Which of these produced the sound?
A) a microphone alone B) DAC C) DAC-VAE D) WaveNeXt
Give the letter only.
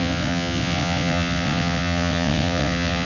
D